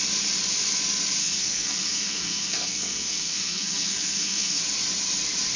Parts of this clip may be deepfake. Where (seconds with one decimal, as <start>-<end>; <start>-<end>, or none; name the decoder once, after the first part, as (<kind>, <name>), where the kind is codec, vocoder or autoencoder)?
1.2-4.6 (codec, SNAC)